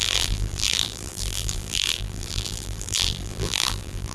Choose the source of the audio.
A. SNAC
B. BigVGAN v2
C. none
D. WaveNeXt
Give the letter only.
B